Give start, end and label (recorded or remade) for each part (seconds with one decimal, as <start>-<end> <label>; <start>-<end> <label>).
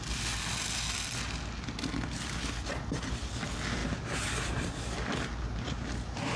0.0-6.4 recorded